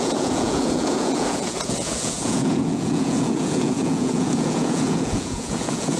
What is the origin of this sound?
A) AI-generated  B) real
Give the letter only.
A